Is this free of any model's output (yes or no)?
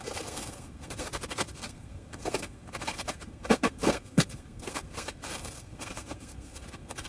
no